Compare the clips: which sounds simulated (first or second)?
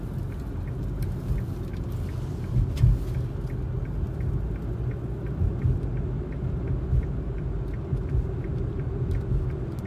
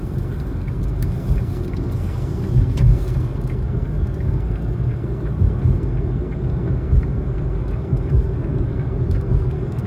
second